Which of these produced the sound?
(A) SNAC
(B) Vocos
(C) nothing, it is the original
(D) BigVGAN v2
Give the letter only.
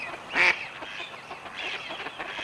C